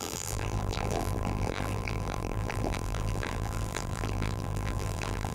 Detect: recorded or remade remade